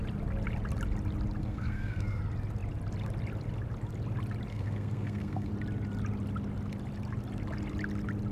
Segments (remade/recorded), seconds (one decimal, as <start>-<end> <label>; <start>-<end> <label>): 0.0-1.4 recorded; 1.4-2.2 remade; 2.2-4.5 recorded; 4.5-5.5 remade; 5.5-8.3 recorded